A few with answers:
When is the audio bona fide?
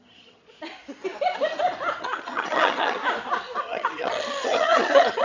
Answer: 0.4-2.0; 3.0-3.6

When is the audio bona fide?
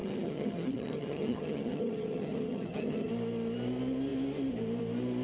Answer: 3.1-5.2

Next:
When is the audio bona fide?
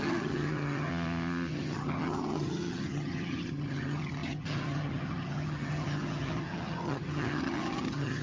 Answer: 0.9-1.5